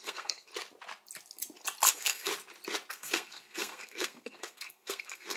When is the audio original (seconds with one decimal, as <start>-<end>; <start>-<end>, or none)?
0.5-1.9; 2.3-2.9